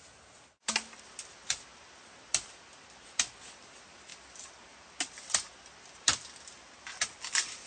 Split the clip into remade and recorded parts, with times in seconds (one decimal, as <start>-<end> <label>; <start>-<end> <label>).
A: 0.0-7.7 recorded